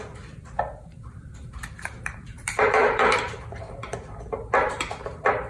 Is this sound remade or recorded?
remade